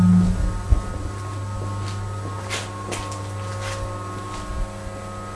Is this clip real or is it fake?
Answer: real